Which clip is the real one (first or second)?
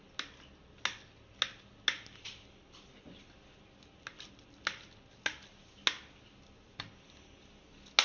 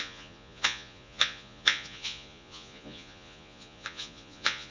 first